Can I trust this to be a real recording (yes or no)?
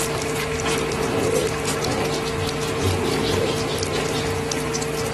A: yes